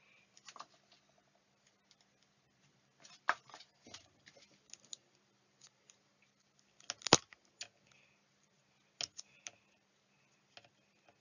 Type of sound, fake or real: real